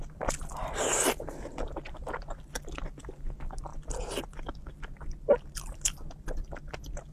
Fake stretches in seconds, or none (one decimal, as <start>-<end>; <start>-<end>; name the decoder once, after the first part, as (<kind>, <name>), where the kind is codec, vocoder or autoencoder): none